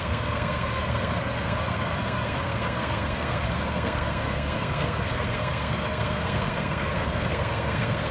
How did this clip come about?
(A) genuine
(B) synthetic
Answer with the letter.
B